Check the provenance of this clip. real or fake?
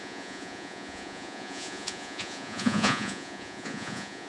fake